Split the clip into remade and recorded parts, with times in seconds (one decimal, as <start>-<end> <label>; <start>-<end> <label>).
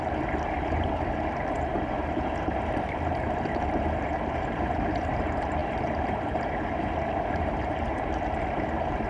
0.0-9.1 remade